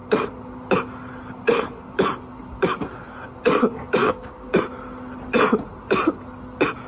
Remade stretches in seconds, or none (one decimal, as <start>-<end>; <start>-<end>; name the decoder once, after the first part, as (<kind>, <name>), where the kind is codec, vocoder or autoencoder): 4.0-4.5 (codec, DAC)